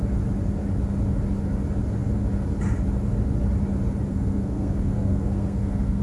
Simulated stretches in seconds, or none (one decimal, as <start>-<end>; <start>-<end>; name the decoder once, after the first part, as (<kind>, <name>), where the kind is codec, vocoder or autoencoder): 4.1-6.0 (codec, SNAC)